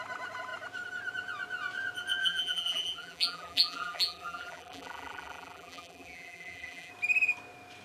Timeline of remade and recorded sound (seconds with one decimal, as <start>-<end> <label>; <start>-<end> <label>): 0.0-2.2 recorded; 2.2-6.9 remade; 6.9-7.8 recorded